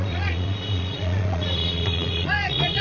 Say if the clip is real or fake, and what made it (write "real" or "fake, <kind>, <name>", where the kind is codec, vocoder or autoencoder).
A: fake, vocoder, Vocos